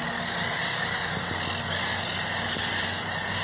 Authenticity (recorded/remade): recorded